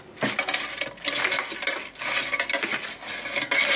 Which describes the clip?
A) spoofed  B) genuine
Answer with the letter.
B